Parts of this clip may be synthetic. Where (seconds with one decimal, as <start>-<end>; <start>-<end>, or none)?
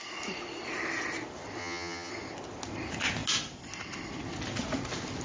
1.6-2.1